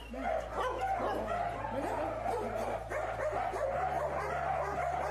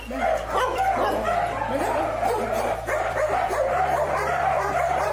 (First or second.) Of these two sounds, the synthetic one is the second